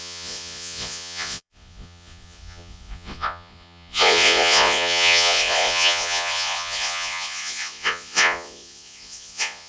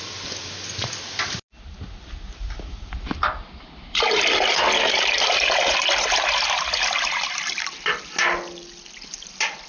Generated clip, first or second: first